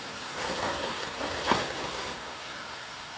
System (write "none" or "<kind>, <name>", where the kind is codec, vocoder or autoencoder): codec, SNAC